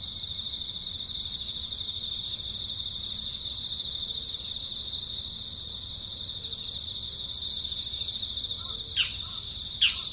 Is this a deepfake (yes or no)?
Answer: no